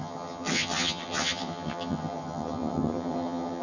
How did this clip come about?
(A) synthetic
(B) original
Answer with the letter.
A